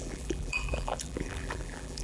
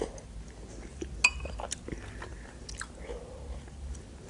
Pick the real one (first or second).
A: second